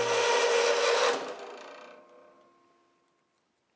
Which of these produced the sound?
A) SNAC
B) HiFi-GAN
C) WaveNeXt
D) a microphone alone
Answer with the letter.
D